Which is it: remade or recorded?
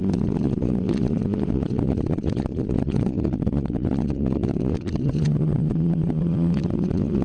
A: remade